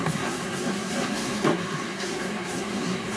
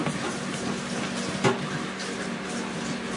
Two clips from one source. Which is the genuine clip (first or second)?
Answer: second